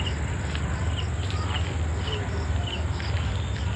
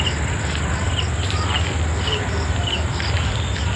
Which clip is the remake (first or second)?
second